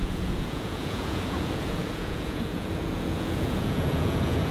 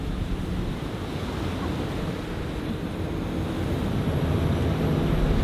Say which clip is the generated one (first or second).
first